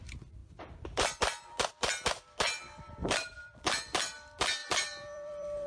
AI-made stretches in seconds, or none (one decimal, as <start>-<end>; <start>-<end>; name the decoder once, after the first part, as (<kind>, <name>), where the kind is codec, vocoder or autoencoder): 3.0-3.6 (vocoder, BigVGAN v2); 4.6-5.7